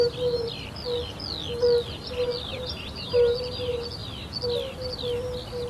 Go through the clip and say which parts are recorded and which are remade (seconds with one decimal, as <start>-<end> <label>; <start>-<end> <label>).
0.0-2.5 recorded; 2.5-3.1 remade; 3.1-5.7 recorded